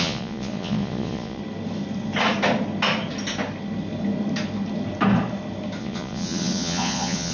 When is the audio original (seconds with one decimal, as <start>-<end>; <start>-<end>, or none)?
1.4-5.8